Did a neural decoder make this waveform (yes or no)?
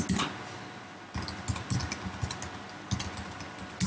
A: no